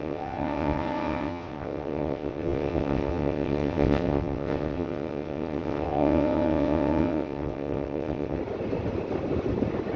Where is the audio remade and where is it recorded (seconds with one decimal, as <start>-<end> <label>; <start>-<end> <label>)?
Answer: 0.0-8.4 remade; 8.4-10.0 recorded

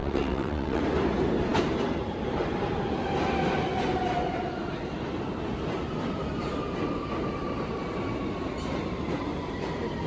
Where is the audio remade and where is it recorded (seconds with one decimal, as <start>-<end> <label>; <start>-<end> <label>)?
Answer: 0.0-0.8 remade; 0.8-10.1 recorded